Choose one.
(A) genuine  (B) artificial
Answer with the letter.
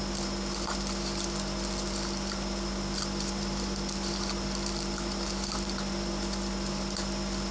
B